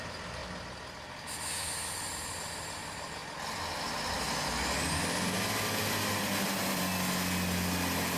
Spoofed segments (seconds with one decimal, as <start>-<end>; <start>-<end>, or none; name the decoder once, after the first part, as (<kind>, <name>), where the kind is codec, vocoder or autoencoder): 0.0-0.4 (vocoder, BigVGAN v2); 2.1-3.2; 6.1-6.9